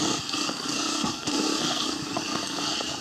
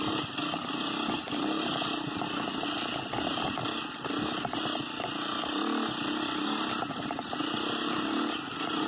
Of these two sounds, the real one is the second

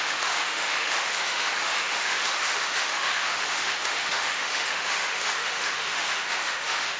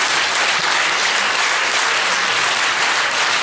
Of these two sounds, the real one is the second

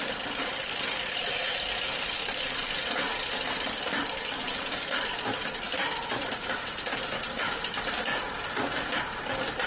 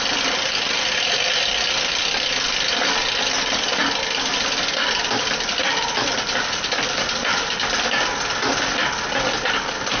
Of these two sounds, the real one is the second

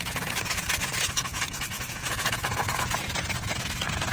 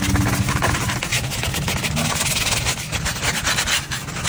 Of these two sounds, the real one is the second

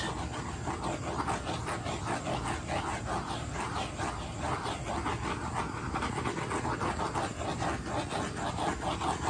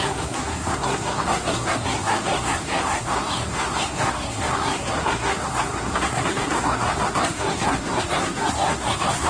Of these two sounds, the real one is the first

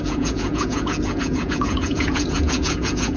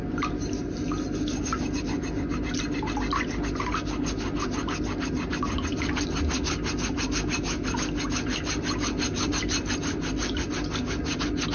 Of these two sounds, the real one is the second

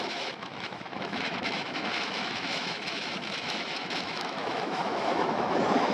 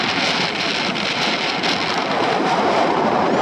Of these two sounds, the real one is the second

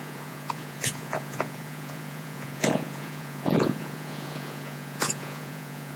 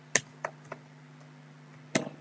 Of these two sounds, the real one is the second